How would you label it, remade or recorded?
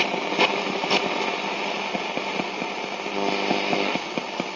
recorded